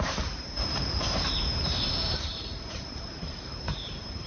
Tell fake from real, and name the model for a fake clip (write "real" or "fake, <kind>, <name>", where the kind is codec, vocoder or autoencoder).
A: fake, vocoder, BigVGAN v2